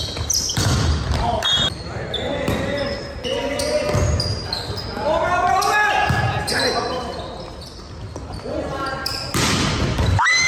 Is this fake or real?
real